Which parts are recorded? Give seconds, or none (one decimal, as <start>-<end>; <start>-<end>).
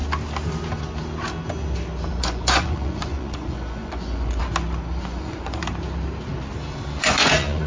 0.0-2.1; 4.4-5.0; 5.6-7.0